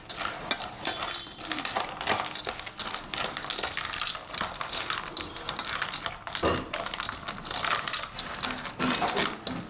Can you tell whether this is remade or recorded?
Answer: recorded